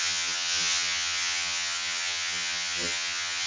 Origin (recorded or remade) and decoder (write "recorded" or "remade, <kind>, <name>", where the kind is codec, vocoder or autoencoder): remade, vocoder, HiFi-GAN